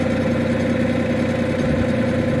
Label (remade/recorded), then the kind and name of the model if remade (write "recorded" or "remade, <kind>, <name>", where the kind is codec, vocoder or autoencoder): recorded